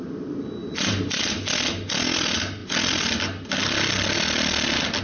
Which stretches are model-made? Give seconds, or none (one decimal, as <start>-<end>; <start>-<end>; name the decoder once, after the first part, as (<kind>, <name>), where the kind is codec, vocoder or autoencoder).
0.6-1.2 (vocoder, BigVGAN v2)